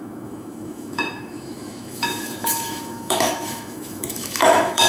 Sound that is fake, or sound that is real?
fake